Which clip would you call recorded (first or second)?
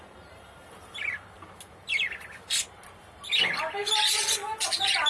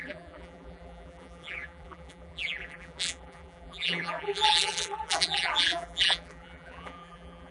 first